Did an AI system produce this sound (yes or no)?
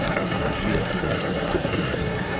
yes